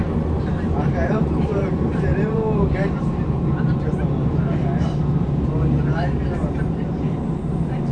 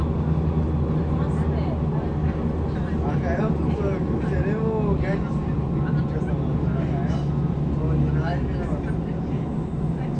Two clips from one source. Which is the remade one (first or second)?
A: first